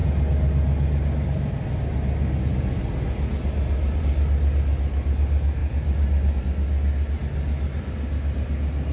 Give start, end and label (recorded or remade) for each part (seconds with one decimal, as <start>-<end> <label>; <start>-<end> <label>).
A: 0.0-8.9 recorded